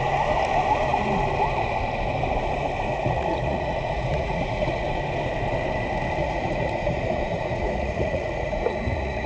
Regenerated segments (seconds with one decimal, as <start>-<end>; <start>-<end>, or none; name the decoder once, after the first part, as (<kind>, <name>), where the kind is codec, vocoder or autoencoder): 2.9-4.9 (vocoder, Vocos); 6.2-9.3